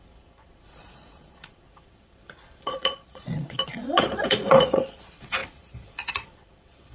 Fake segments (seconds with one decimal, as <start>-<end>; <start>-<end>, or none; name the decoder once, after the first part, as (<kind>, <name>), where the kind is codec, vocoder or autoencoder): 0.0-6.9 (vocoder, Vocos)